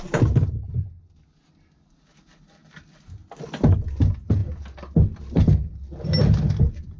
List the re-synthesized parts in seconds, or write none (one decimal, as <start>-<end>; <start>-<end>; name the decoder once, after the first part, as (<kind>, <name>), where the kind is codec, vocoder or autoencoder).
none